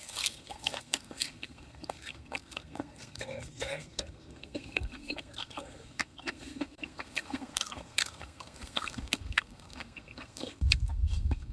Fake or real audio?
fake